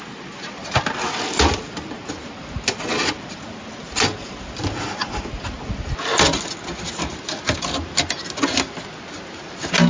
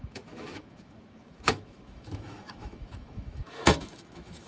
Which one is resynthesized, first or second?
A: second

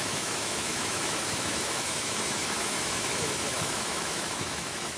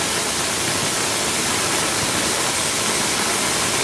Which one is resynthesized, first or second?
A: first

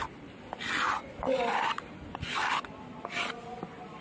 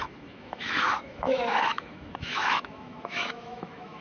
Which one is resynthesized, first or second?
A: second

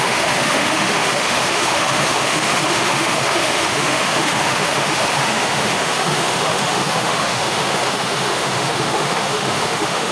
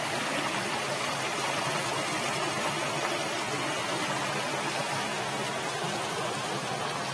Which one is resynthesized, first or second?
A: first